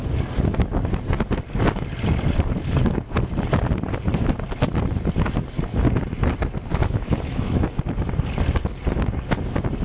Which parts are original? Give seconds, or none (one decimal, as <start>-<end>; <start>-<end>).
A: 0.0-6.7; 7.6-9.8